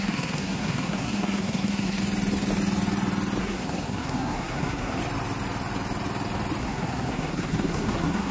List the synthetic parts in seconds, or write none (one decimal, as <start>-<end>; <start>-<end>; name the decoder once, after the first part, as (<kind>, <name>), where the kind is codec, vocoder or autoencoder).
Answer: 0.0-2.0 (codec, SNAC); 3.4-5.0; 6.6-8.3